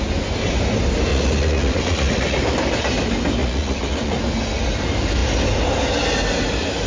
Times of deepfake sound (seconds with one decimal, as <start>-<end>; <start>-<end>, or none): 1.1-2.4; 3.4-4.2